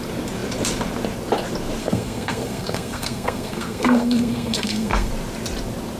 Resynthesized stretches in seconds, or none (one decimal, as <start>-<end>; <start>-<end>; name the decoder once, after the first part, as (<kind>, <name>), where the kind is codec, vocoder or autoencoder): 1.8-5.1 (codec, SNAC)